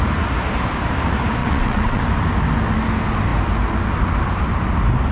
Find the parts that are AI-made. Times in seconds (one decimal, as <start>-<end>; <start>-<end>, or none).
1.4-2.0